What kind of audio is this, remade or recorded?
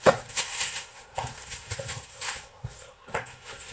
remade